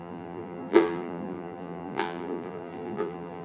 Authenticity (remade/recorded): remade